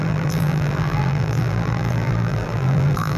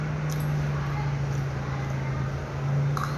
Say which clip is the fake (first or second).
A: first